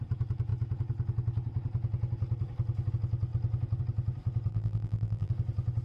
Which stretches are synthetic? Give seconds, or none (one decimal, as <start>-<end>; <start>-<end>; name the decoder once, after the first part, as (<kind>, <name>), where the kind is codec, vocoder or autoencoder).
4.5-5.3 (vocoder, BigVGAN v2)

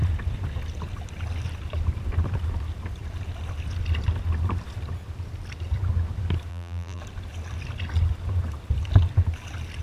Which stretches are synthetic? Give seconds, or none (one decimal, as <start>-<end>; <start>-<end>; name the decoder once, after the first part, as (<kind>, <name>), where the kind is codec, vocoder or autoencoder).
6.5-7.0 (vocoder, BigVGAN v2)

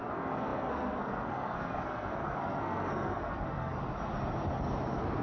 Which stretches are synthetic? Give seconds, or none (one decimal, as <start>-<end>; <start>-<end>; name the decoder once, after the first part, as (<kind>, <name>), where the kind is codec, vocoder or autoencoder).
0.0-3.8 (codec, SNAC)

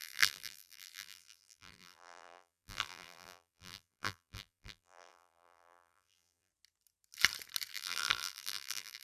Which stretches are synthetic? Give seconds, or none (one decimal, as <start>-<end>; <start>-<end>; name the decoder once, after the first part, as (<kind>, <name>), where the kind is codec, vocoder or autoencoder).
0.0-6.5 (vocoder, BigVGAN v2); 7.7-9.0